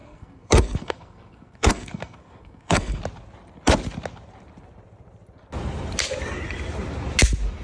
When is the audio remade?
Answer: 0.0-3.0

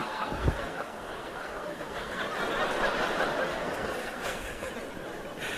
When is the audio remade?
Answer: 0.0-2.2; 3.5-4.7

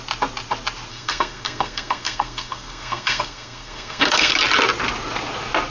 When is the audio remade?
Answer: 0.9-4.3

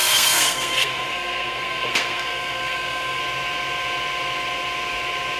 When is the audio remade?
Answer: 0.0-3.2